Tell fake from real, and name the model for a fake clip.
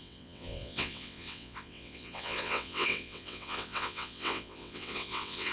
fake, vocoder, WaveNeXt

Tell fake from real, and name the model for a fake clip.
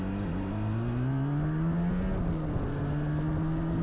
real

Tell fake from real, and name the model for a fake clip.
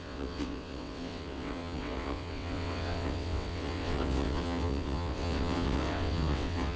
fake, vocoder, WaveNeXt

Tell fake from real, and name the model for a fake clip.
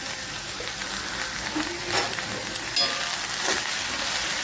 real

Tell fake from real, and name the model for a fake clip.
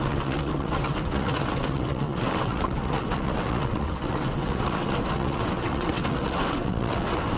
fake, vocoder, WaveNeXt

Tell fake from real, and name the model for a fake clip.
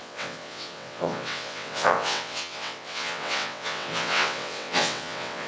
fake, vocoder, WaveNeXt